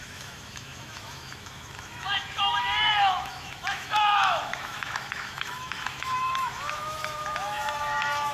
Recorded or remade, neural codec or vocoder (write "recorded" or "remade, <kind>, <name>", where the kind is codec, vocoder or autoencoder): remade, autoencoder, DAC-VAE